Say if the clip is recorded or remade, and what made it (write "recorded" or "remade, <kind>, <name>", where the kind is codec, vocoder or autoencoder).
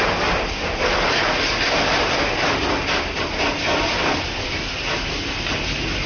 recorded